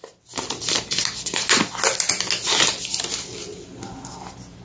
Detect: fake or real real